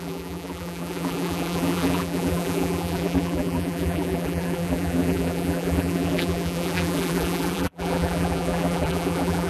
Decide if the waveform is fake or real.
fake